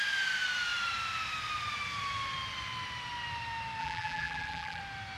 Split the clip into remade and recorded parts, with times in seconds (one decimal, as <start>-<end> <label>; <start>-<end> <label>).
0.0-3.8 recorded; 3.8-4.8 remade; 4.8-5.2 recorded